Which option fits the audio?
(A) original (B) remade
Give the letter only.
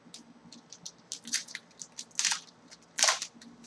A